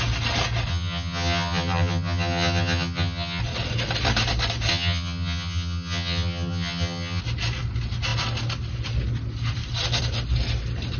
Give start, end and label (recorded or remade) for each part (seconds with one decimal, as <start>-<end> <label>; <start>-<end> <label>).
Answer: 0.0-0.7 recorded; 0.7-3.4 remade; 3.4-4.7 recorded; 4.7-7.2 remade; 7.2-11.0 recorded